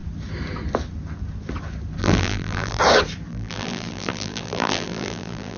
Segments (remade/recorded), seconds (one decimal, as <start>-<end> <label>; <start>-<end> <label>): 0.0-2.0 recorded; 2.0-2.8 remade; 2.8-3.3 recorded; 3.3-5.6 remade